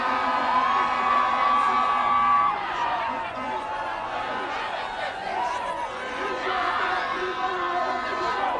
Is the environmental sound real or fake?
fake